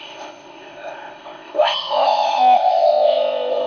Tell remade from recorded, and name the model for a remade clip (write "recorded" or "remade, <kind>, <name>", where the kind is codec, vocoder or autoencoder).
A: remade, codec, ZipCodec